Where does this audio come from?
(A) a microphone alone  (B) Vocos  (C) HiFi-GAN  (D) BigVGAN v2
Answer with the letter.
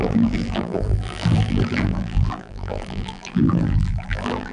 D